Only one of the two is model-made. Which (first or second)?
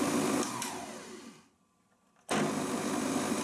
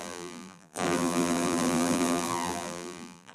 second